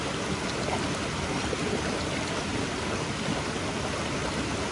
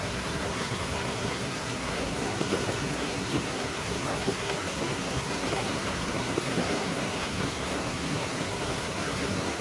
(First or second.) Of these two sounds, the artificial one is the second